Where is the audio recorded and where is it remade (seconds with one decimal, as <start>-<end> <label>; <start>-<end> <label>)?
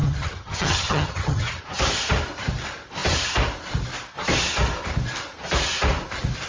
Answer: 0.0-1.6 remade; 1.6-6.5 recorded